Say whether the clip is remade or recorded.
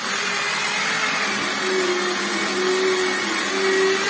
recorded